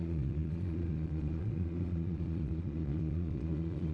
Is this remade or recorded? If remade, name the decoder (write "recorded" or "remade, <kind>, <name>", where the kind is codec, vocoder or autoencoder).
remade, vocoder, Vocos